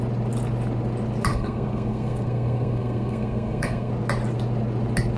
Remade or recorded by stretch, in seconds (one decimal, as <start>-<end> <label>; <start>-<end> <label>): 0.0-1.3 recorded; 1.3-3.9 remade; 3.9-5.2 recorded